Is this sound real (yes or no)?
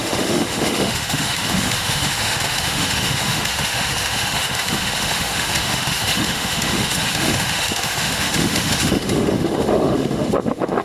no